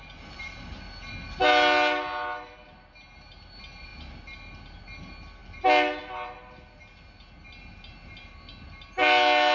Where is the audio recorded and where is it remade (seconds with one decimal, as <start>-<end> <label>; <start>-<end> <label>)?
0.0-9.5 recorded